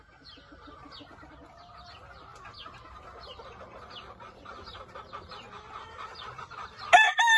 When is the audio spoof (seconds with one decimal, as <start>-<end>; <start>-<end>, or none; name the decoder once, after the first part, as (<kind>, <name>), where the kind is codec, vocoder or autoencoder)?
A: none